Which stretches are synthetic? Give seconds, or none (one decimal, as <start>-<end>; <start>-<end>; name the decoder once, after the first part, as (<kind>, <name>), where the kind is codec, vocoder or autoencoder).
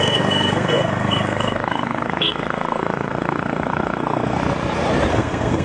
0.0-4.4 (codec, SNAC); 5.1-5.6